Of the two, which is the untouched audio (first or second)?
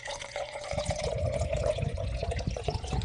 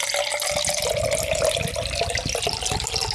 second